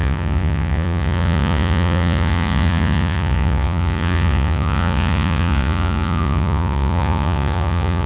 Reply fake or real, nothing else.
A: fake